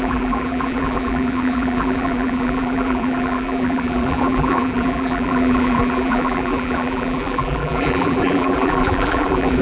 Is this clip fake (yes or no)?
yes